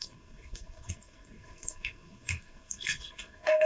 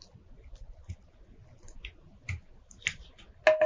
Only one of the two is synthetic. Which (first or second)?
first